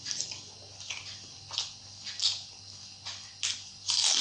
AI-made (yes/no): no